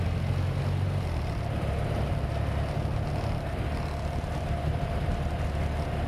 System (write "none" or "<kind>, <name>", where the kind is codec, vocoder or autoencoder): none